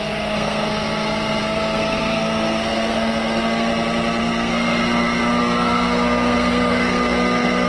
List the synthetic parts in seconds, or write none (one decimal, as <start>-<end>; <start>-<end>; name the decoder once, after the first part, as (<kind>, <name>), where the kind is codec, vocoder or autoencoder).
0.0-3.7 (codec, SNAC); 4.2-4.8; 5.4-7.7